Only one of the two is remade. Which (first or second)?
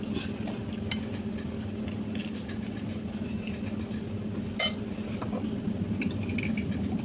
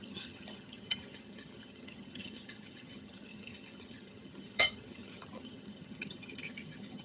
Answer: second